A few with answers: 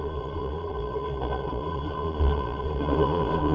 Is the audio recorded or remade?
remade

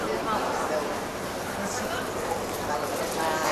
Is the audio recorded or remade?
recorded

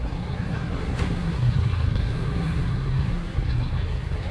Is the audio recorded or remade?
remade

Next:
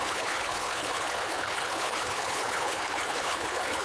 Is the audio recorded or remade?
remade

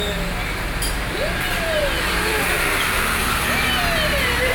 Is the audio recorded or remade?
recorded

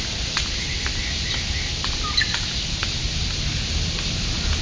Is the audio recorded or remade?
recorded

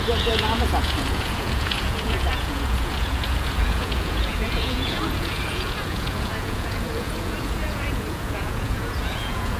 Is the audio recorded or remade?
remade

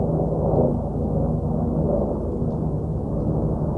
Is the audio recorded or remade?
recorded